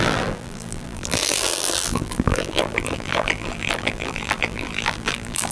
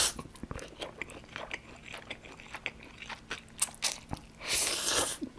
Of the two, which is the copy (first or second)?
first